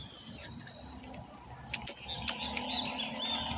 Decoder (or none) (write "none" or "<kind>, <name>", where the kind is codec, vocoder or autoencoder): none